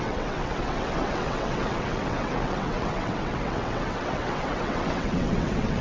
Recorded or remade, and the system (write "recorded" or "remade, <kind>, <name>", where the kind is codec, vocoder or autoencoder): remade, vocoder, WaveNeXt